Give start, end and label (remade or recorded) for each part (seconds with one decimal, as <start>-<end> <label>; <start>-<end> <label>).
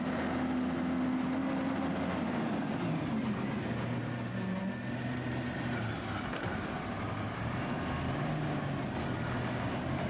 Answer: 0.0-10.1 recorded